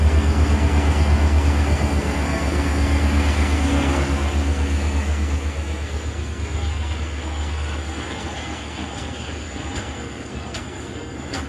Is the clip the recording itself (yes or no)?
no